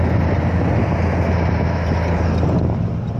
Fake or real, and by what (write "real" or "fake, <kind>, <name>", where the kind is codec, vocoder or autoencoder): real